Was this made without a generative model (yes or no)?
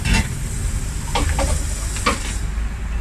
yes